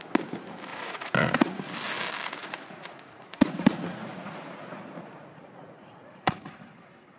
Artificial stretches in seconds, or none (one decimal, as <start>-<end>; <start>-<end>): 0.7-1.6; 2.4-6.5